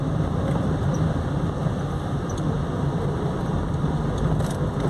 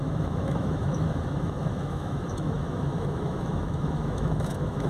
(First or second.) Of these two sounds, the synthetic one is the second